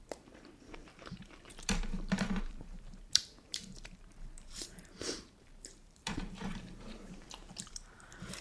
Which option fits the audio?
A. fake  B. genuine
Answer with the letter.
A